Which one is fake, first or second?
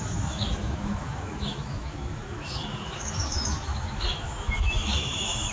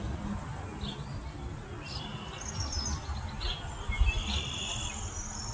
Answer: first